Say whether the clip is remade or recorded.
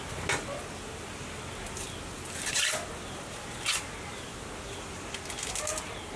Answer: recorded